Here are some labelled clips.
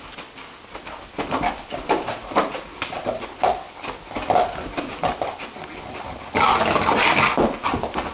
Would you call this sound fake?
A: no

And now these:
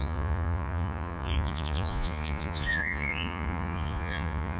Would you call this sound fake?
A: yes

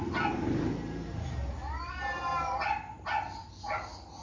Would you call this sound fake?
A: no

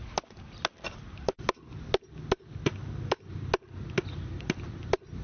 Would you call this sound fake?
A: no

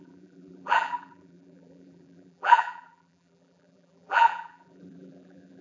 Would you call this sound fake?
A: yes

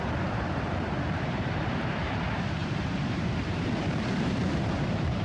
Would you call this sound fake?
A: yes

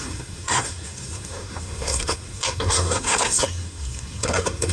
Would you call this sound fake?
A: yes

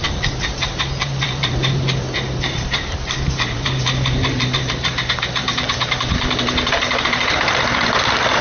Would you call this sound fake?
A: yes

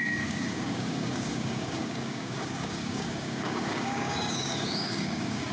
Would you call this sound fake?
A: yes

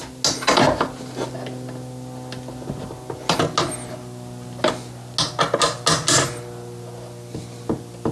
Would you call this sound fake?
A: no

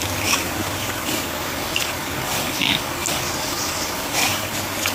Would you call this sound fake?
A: yes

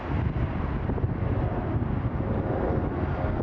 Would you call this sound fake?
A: no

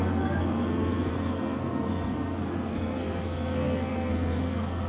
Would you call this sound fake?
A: yes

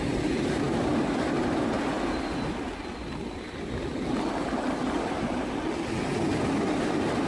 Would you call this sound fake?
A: no